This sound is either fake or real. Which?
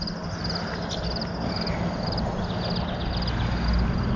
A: real